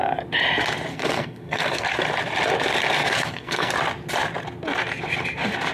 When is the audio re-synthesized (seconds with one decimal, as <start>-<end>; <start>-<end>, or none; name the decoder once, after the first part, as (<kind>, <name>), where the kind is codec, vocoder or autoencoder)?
0.9-1.9 (codec, SNAC); 3.0-3.7